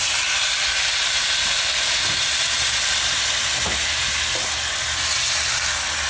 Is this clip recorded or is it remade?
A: recorded